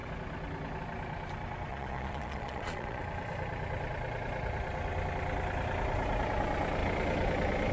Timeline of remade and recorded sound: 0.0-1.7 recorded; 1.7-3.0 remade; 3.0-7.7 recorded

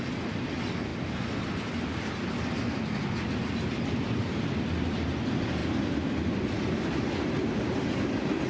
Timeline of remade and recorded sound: 0.0-8.5 recorded